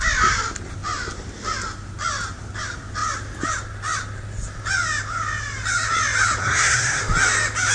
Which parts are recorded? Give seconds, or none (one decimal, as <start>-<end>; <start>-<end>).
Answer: 0.0-6.4; 7.0-7.7